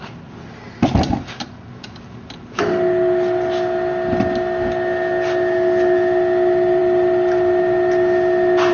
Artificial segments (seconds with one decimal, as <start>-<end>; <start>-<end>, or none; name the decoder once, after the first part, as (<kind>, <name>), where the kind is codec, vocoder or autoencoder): none